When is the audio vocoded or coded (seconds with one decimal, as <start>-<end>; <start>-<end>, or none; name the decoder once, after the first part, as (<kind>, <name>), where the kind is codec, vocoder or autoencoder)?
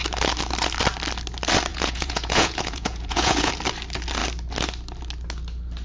1.7-3.5 (vocoder, Vocos)